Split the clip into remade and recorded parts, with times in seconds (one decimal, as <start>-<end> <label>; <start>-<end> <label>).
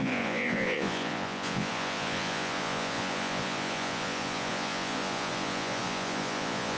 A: 0.0-6.8 remade